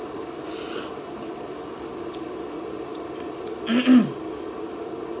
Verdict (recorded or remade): recorded